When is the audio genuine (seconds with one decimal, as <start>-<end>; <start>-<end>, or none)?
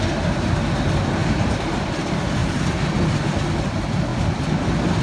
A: 0.0-1.2; 1.9-2.4; 3.0-5.0